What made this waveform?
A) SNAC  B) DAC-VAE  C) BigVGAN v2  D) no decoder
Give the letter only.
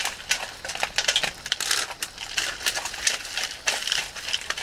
D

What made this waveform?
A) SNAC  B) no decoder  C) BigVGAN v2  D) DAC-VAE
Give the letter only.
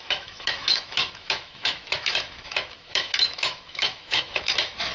D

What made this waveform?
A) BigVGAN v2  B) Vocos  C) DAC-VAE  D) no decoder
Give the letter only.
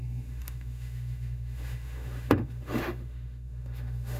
C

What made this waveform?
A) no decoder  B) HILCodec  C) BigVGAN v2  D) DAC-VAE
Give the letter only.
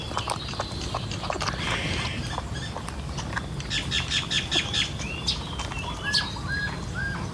A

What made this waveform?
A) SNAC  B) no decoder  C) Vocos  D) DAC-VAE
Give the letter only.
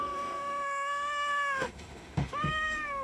D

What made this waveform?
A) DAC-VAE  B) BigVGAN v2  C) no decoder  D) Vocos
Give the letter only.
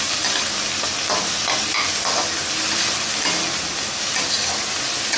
C